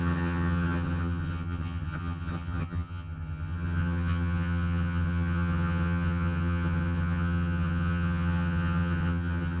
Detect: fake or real fake